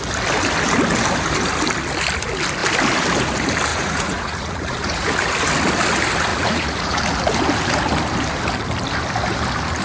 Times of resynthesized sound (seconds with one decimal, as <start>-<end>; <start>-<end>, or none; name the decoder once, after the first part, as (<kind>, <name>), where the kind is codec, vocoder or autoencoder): 3.7-5.1 (vocoder, Vocos); 6.3-7.0